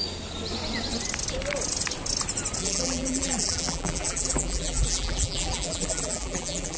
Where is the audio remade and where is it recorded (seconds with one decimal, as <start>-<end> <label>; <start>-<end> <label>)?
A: 0.0-2.6 recorded; 2.6-6.8 remade